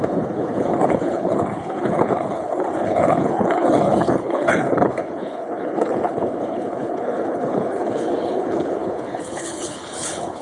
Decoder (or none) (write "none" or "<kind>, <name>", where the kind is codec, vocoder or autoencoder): codec, HILCodec